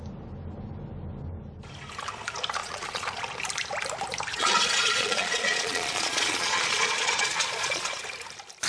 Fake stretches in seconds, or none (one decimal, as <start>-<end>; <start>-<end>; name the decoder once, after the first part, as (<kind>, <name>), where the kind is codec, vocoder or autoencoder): 2.6-3.2 (vocoder, Vocos); 4.3-8.0